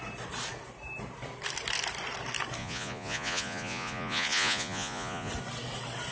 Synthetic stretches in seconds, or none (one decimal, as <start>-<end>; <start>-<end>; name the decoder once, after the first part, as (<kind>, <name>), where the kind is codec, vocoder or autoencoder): 2.6-5.3 (vocoder, Vocos)